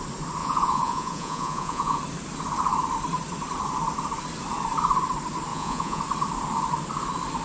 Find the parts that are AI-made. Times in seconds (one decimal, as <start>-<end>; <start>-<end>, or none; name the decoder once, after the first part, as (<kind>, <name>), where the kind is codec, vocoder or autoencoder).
0.4-2.0 (vocoder, Vocos); 5.5-6.0